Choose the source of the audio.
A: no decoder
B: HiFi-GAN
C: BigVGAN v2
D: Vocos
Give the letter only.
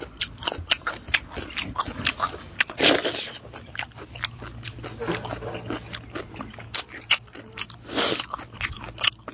A